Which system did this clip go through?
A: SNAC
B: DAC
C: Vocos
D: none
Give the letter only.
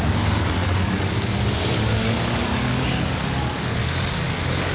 B